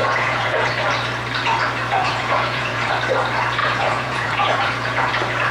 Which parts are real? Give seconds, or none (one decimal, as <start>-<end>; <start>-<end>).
0.7-2.0; 2.9-3.6; 5.1-5.5